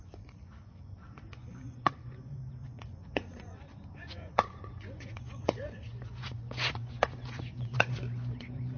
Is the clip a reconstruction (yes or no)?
yes